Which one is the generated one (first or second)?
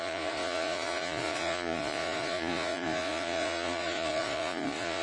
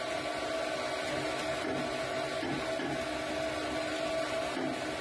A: first